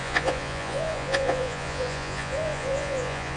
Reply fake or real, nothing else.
fake